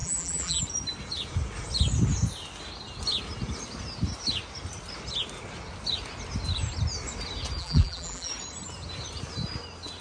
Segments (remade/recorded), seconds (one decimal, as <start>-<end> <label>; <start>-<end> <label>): 0.0-0.6 remade; 0.6-7.6 recorded; 7.6-8.3 remade; 8.3-10.0 recorded

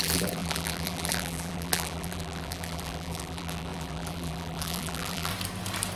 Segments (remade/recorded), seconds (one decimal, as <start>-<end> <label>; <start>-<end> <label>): 0.0-5.3 remade; 5.3-6.0 recorded

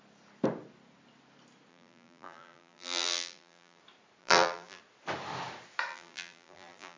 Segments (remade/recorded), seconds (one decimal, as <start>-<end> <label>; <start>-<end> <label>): 0.0-1.7 recorded; 1.7-3.8 remade; 3.8-4.2 recorded; 4.2-4.8 remade; 4.8-5.9 recorded; 5.9-7.0 remade

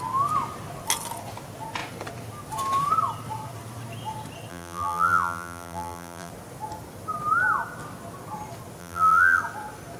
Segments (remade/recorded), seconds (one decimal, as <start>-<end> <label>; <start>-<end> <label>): 0.0-4.5 recorded; 4.5-6.3 remade; 6.3-8.8 recorded; 8.8-9.4 remade; 9.4-10.0 recorded